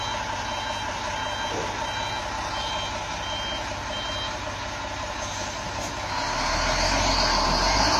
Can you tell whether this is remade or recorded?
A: recorded